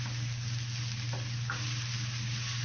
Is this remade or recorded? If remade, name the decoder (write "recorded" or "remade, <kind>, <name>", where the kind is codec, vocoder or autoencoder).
recorded